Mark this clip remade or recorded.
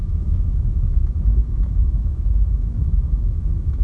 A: remade